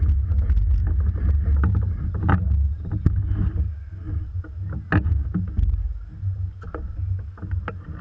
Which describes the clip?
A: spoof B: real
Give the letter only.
B